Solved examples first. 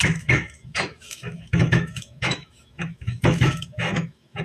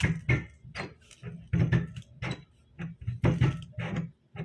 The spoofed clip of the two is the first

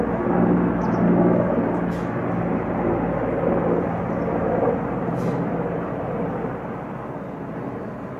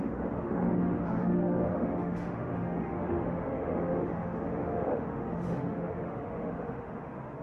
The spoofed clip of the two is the second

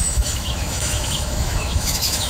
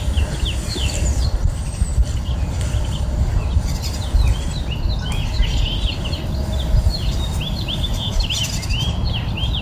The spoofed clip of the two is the first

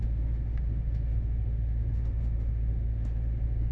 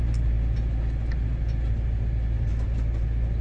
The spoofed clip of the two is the first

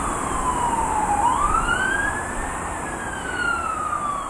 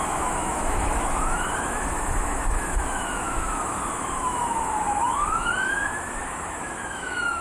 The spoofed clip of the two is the second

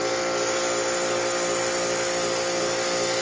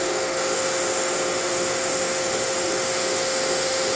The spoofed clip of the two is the second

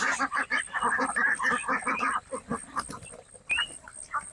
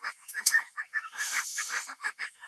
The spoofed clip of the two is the second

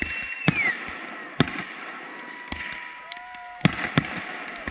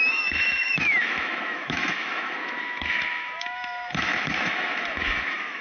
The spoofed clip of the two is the second